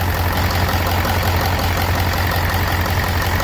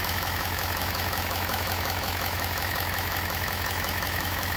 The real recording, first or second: first